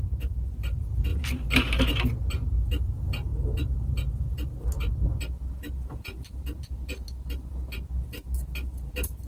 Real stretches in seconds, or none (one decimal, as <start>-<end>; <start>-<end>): 0.0-9.3